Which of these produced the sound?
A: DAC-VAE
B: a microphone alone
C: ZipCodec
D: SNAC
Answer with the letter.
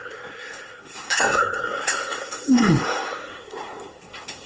D